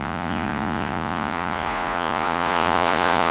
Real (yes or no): no